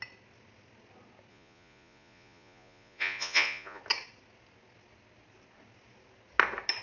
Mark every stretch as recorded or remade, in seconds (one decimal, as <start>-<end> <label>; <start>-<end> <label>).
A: 0.0-1.3 recorded; 1.3-3.8 remade; 3.8-6.8 recorded